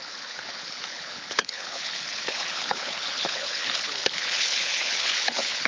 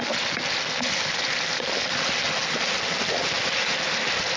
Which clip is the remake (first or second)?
first